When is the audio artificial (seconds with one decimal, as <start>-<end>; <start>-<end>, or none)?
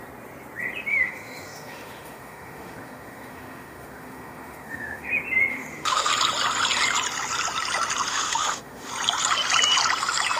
0.9-5.1; 5.5-6.1; 8.1-8.9